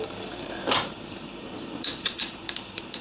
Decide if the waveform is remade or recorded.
remade